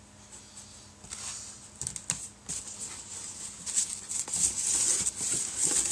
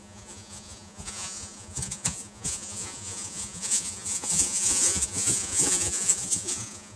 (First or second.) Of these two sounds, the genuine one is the first